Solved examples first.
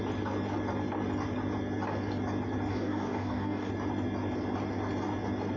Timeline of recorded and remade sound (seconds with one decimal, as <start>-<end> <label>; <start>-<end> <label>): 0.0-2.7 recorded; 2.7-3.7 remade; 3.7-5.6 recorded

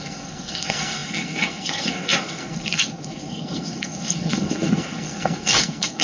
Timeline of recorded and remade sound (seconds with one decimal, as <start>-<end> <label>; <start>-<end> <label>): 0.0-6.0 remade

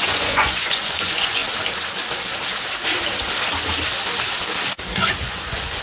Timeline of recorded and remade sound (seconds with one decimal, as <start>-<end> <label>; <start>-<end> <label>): 0.0-1.4 remade; 1.4-4.9 recorded; 4.9-5.8 remade

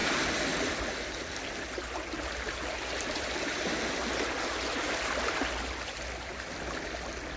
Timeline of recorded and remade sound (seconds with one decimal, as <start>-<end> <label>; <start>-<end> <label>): 0.0-7.4 recorded

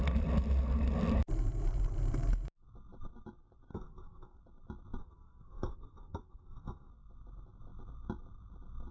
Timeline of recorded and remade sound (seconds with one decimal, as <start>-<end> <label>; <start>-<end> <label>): 0.0-3.7 recorded; 3.7-4.4 remade; 4.4-5.0 recorded; 5.0-6.9 remade; 6.9-8.9 recorded